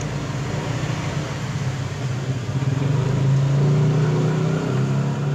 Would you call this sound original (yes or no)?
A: yes